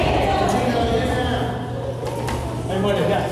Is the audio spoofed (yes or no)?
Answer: no